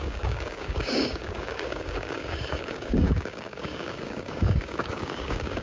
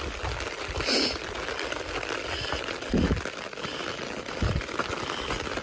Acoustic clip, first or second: second